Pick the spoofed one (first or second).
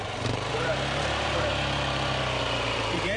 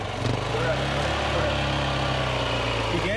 first